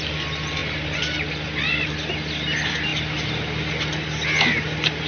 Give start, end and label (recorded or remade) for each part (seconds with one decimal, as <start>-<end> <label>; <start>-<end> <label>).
0.0-5.1 recorded

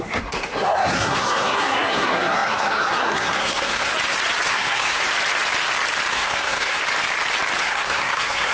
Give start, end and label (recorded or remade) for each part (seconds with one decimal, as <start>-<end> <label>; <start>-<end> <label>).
0.0-3.9 remade; 3.9-4.5 recorded; 4.5-5.0 remade; 5.0-6.1 recorded; 6.1-6.8 remade; 6.8-7.6 recorded; 7.6-8.5 remade

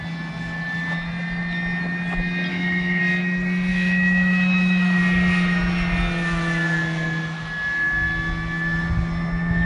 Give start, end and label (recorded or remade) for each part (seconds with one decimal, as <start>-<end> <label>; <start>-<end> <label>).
0.0-2.5 recorded; 2.5-3.0 remade; 3.0-3.7 recorded; 3.7-5.0 remade; 5.0-9.7 recorded

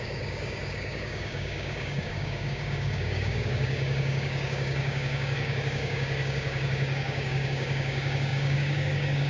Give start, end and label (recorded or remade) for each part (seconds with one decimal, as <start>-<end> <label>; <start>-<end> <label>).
0.0-9.3 remade